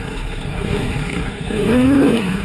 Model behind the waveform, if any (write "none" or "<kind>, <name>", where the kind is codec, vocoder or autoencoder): codec, SNAC